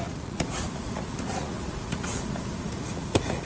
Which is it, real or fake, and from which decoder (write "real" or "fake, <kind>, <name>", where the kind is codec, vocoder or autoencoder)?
fake, vocoder, Vocos